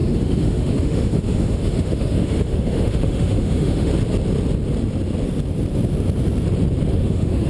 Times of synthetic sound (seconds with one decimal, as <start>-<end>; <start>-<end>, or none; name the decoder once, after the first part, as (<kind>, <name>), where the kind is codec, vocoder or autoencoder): 0.0-3.9 (autoencoder, DAC-VAE); 6.9-7.5